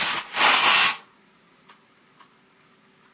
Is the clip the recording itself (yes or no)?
yes